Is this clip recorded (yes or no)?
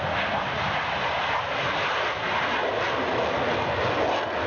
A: yes